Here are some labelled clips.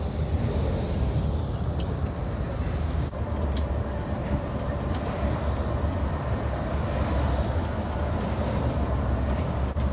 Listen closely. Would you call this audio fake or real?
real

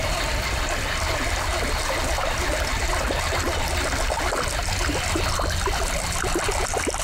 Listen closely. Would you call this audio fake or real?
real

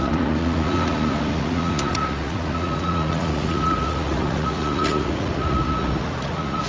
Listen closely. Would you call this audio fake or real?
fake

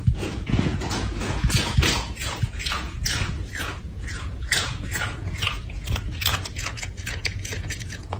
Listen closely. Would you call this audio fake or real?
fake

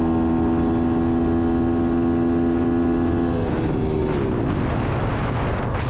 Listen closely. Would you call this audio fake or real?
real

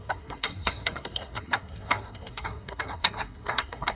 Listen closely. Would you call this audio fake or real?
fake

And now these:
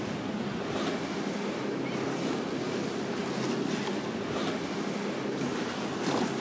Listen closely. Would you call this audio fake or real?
real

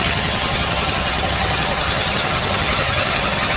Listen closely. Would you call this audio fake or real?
fake